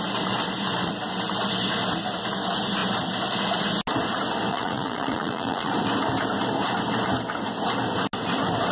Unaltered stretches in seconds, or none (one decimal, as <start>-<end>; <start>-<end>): 0.0-4.5; 5.7-8.7